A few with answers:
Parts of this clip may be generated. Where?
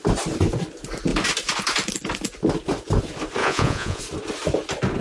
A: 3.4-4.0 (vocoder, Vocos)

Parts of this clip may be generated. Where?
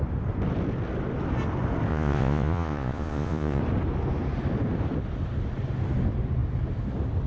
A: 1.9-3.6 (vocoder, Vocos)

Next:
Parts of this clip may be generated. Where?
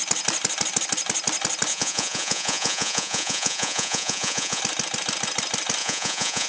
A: 1.7-4.6 (vocoder, Vocos); 5.8-6.5